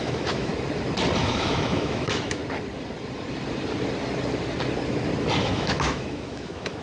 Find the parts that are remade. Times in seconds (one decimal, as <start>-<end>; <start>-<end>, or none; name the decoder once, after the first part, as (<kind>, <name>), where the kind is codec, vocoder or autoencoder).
0.0-0.5 (autoencoder, DAC-VAE); 1.2-2.4; 5.4-6.8